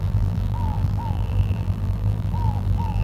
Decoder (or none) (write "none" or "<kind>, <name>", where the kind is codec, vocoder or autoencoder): vocoder, BigVGAN v2